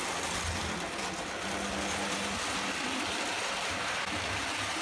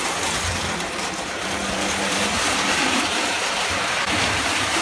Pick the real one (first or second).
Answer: first